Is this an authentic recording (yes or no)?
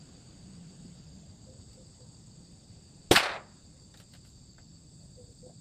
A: yes